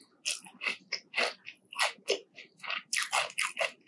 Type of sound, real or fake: real